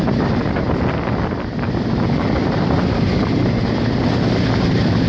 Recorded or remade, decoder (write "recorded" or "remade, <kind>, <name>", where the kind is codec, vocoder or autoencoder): recorded